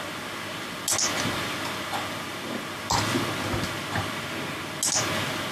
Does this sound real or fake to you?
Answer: real